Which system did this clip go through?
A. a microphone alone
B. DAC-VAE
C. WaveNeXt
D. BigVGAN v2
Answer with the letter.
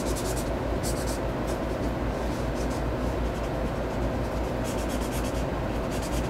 A